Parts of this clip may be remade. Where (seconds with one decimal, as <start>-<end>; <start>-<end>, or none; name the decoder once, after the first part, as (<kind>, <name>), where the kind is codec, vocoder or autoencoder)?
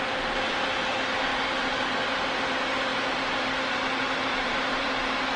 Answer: 1.3-1.9 (vocoder, BigVGAN v2); 4.3-4.9